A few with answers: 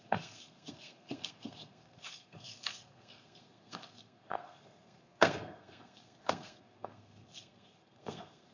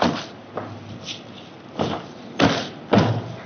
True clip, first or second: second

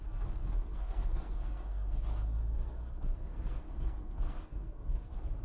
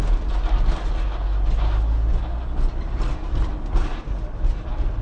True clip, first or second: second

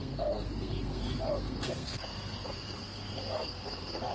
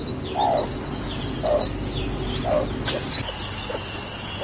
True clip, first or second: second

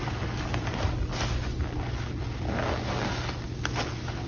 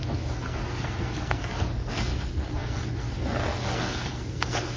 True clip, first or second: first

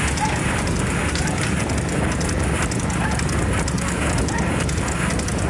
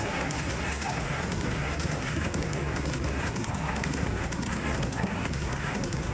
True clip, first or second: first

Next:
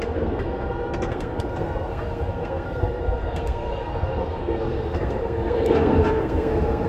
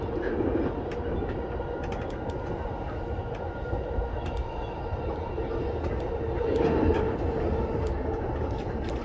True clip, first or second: second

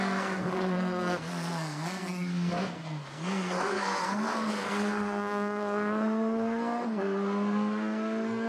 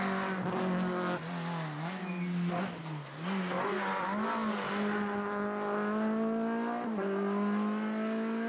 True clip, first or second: second